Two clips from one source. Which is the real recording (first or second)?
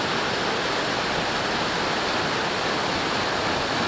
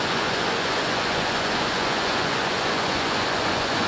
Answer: first